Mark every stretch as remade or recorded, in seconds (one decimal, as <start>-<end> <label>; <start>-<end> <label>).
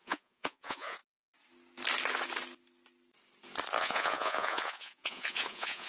0.0-1.0 remade; 1.0-3.8 recorded; 3.8-5.9 remade